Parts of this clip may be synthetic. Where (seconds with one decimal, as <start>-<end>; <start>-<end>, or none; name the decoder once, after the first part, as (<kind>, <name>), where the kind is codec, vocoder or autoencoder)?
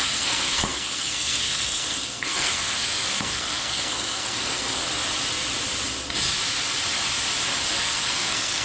0.0-4.8 (codec, SNAC); 7.7-8.6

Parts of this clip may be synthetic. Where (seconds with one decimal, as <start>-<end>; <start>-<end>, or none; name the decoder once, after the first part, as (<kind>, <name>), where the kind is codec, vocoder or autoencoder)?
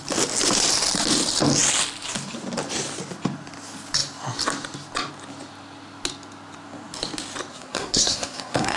7.5-8.8 (codec, SNAC)